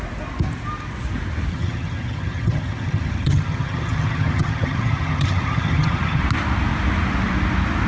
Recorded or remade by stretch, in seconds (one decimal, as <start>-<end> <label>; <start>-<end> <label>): 0.0-1.5 recorded; 1.5-6.2 remade; 6.2-7.9 recorded